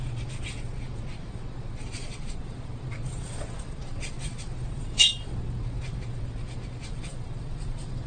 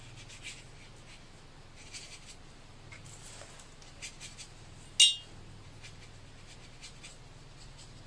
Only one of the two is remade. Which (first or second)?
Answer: first